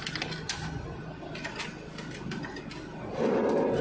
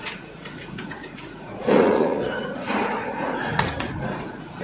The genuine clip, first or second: first